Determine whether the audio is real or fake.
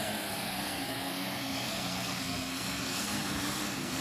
fake